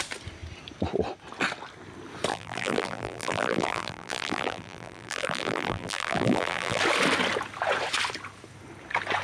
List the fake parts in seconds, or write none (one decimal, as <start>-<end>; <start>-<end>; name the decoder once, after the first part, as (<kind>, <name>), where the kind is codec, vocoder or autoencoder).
2.3-6.8 (vocoder, BigVGAN v2)